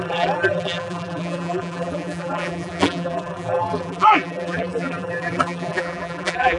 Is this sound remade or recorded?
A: remade